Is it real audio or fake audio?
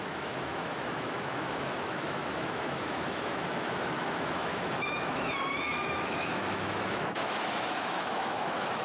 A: fake